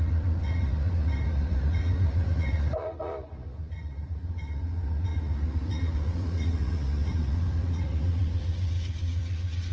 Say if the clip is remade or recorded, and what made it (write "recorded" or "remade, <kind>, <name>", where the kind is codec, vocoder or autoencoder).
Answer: remade, vocoder, Vocos